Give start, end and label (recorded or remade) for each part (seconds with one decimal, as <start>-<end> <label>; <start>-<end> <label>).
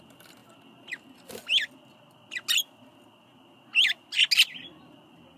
0.0-5.4 recorded